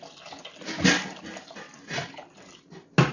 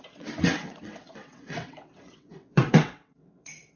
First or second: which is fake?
second